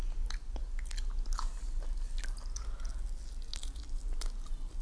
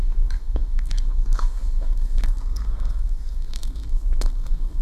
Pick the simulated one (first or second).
second